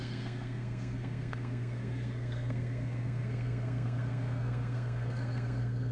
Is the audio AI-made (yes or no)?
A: yes